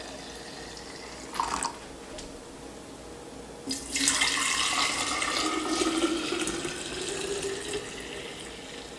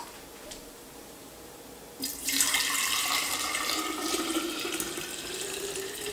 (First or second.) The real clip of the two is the first